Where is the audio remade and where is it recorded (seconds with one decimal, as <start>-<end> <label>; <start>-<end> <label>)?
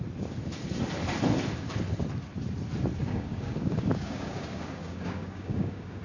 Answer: 0.0-3.0 recorded; 3.0-6.0 remade